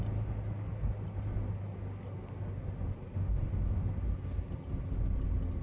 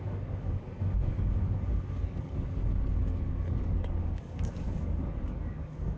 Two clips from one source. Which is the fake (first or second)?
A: second